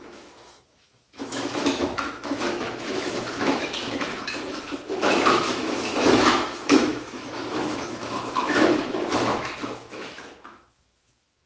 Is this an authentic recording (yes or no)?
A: no